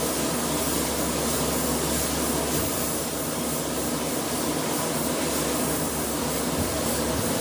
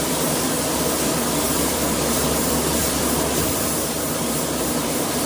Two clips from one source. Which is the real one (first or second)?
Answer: first